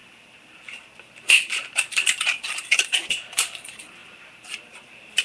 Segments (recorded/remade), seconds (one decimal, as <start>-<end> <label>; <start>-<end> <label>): 0.0-5.2 remade